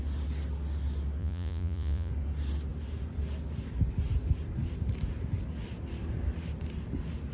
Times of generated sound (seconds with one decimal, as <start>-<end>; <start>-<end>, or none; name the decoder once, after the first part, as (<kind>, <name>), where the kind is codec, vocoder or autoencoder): 1.2-2.1 (vocoder, Vocos)